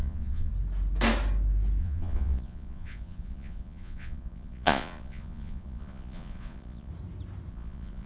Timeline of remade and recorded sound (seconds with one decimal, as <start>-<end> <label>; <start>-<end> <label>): 0.0-0.5 remade; 0.5-1.8 recorded; 1.8-6.9 remade; 6.9-7.5 recorded; 7.5-8.1 remade